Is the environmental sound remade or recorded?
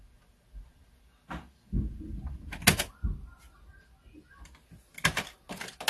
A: recorded